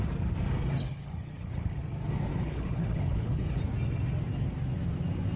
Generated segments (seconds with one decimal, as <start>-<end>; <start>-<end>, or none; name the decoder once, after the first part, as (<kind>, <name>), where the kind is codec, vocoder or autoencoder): 0.8-1.7 (codec, HILCodec); 2.3-3.6